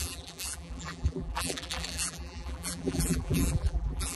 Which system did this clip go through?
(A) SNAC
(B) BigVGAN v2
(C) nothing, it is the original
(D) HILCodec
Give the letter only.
B